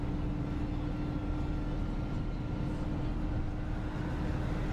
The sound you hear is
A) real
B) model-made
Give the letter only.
A